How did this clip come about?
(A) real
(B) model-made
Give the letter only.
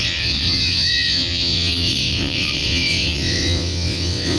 B